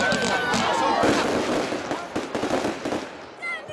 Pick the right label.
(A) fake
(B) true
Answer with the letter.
B